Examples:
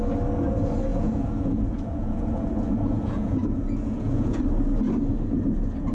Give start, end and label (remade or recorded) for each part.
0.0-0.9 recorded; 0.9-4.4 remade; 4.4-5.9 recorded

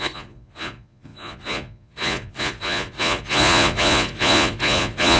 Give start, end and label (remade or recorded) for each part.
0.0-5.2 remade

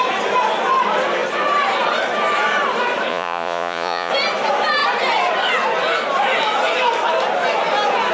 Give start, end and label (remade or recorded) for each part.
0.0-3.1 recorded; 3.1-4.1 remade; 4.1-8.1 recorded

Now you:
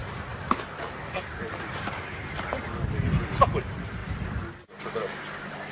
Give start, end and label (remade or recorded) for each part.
0.0-5.7 recorded